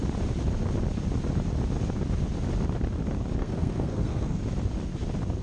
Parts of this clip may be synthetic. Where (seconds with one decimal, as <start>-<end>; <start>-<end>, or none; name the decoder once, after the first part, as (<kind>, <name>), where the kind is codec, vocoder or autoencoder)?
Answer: 3.4-4.4 (codec, SNAC)